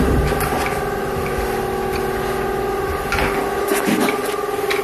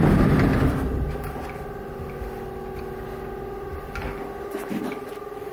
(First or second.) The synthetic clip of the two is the second